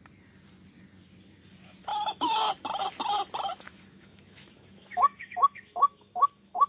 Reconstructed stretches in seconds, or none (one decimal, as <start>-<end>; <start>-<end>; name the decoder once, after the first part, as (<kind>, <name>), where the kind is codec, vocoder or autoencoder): 1.9-2.5 (autoencoder, DAC-VAE); 3.5-6.7